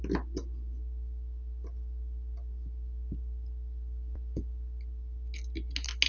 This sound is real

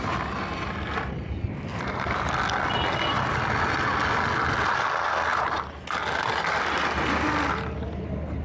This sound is real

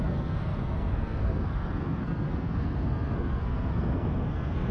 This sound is fake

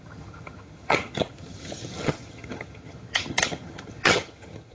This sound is fake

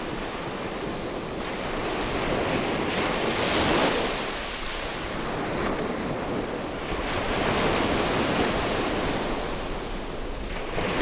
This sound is real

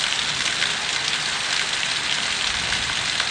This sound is real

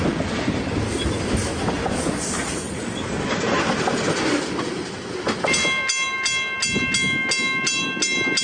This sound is real